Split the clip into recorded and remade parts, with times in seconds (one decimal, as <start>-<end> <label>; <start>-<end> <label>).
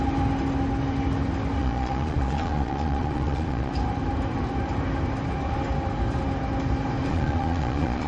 0.0-1.6 recorded; 1.6-3.7 remade; 3.7-7.1 recorded; 7.1-8.1 remade